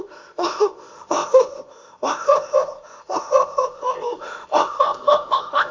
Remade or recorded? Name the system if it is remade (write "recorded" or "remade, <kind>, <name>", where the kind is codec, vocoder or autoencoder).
remade, codec, ZipCodec